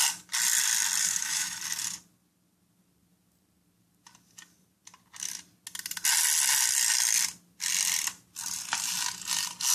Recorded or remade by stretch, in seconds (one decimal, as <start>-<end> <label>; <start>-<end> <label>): 0.0-1.0 recorded; 1.0-1.6 remade; 1.6-9.7 recorded